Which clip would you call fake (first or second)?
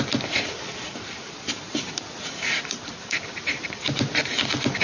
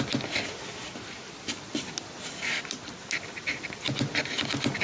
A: first